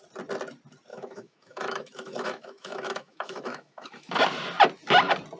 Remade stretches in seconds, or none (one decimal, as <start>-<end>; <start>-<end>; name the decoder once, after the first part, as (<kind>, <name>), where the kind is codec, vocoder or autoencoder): 0.9-4.1 (autoencoder, DAC-VAE)